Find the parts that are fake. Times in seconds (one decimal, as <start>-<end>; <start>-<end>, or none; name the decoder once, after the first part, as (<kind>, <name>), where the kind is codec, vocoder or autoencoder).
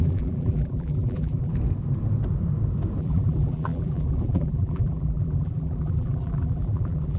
0.0-1.5 (vocoder, BigVGAN v2); 3.0-7.2